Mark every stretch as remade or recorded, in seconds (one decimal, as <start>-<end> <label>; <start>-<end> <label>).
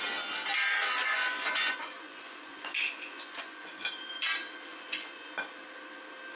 0.0-1.0 recorded; 1.0-3.7 remade; 3.7-4.7 recorded; 4.7-5.3 remade; 5.3-6.4 recorded